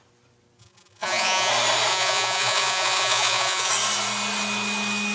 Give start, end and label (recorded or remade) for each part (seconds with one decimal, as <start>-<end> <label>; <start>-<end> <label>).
0.0-0.6 recorded; 0.6-1.5 remade; 1.5-1.9 recorded; 1.9-3.7 remade; 3.7-5.1 recorded